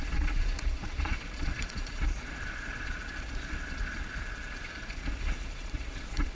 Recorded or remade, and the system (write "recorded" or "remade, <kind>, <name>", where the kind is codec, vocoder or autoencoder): remade, vocoder, Vocos